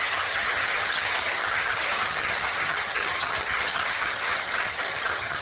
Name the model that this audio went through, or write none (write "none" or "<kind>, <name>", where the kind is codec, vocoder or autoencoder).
vocoder, HiFi-GAN